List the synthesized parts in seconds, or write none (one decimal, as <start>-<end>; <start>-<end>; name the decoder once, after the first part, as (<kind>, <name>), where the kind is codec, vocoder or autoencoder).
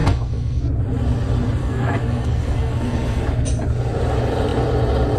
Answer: 0.0-0.6 (codec, SNAC); 1.6-3.2